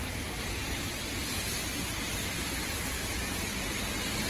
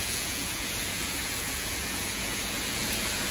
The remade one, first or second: second